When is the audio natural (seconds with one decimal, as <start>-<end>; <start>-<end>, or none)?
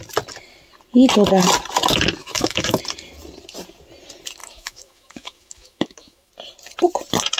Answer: 0.0-2.2; 2.8-4.4; 6.3-7.4